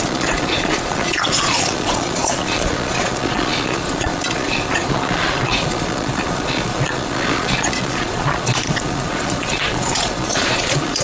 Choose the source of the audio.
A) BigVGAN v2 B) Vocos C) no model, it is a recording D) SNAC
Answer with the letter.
B